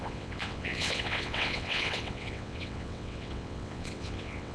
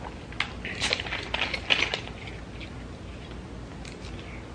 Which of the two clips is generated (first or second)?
first